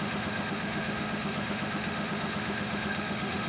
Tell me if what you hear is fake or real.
fake